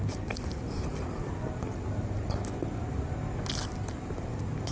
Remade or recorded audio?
recorded